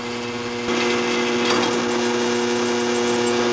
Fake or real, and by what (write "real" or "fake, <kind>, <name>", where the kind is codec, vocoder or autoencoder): real